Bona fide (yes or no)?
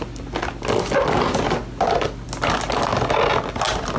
yes